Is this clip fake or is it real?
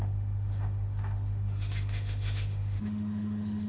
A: fake